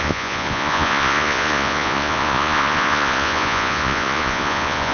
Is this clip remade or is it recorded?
remade